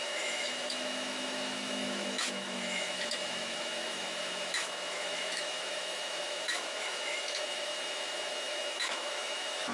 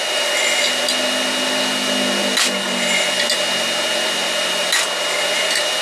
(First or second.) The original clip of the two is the second